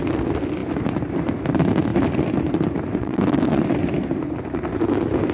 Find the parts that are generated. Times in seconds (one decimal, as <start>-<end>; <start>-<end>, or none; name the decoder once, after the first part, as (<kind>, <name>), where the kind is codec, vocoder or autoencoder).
3.0-3.6 (vocoder, WaveNeXt)